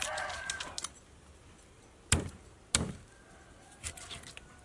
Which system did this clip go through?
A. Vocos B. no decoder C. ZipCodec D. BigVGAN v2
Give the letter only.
B